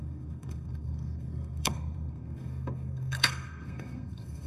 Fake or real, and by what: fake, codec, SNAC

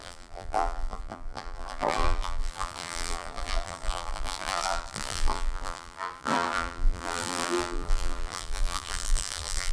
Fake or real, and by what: fake, vocoder, BigVGAN v2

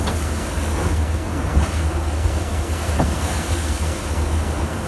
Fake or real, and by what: fake, codec, SNAC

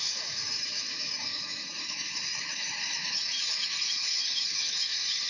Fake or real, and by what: fake, autoencoder, DAC-VAE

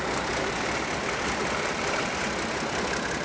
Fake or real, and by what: fake, vocoder, BigVGAN v2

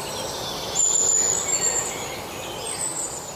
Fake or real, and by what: real